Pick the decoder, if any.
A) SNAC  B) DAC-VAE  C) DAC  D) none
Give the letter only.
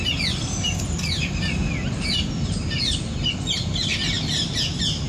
D